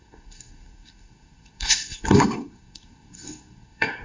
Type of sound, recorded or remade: remade